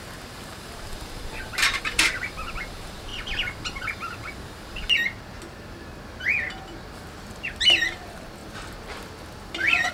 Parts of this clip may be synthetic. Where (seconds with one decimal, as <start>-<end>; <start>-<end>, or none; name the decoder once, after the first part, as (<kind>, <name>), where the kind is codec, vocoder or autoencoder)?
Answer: 0.0-3.1 (vocoder, BigVGAN v2); 7.1-9.9